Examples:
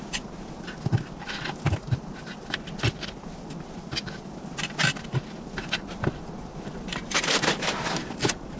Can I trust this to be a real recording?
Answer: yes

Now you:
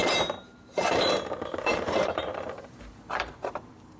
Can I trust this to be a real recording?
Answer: no